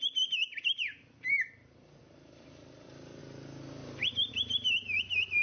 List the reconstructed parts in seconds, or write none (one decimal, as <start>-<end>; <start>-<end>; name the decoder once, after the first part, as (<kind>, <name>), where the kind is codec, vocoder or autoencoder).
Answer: 0.0-3.2 (vocoder, BigVGAN v2); 4.3-5.4